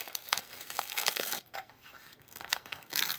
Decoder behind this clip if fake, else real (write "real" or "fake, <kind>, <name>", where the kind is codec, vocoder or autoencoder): fake, codec, SNAC